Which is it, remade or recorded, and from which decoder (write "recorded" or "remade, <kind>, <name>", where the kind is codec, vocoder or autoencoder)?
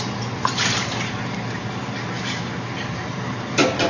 recorded